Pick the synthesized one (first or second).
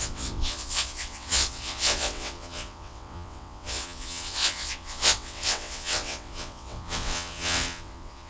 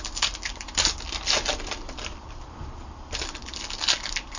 first